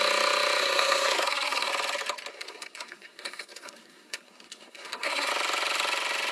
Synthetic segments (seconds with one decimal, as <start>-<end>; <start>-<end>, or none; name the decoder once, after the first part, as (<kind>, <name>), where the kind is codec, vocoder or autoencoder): 0.6-1.7 (codec, SNAC); 2.3-5.3